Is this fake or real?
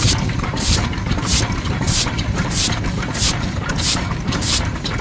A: fake